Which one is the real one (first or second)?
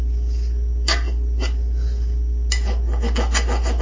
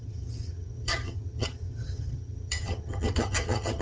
first